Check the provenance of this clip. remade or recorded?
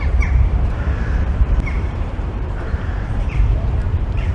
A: remade